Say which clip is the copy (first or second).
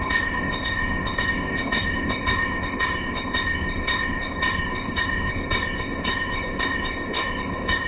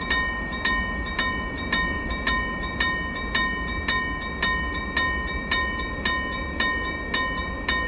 first